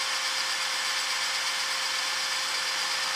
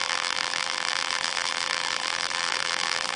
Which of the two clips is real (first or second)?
first